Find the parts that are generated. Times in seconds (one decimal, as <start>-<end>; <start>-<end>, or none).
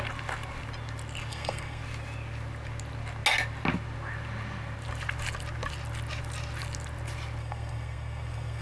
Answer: 1.3-1.8; 7.4-8.6